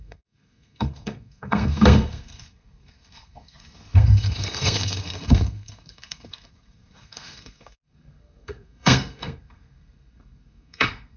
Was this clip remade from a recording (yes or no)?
yes